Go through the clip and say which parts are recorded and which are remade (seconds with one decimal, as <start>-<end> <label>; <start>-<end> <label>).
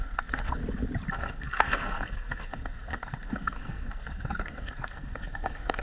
0.0-0.6 remade; 0.6-1.1 recorded; 1.1-5.8 remade